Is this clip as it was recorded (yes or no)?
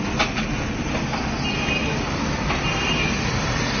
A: yes